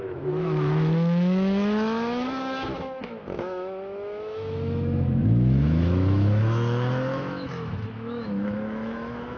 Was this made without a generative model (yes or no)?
no